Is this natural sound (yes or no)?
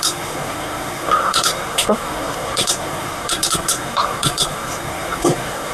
no